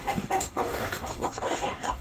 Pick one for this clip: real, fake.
fake